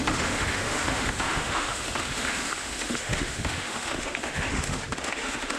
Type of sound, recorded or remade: remade